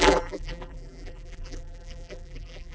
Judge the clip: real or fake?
fake